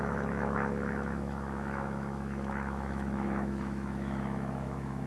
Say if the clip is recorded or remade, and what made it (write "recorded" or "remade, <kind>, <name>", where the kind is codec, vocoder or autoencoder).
remade, autoencoder, DAC-VAE